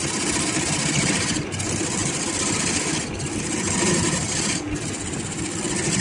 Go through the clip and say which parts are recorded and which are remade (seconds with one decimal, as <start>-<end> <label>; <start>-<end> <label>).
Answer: 0.0-6.0 recorded

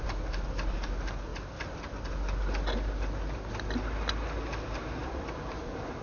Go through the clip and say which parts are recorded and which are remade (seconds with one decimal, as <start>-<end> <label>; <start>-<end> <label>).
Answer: 0.0-1.3 recorded; 1.3-2.0 remade; 2.0-5.0 recorded; 5.0-5.6 remade; 5.6-6.0 recorded